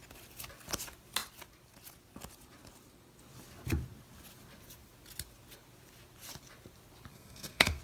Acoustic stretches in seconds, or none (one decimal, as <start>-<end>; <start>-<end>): 0.0-7.1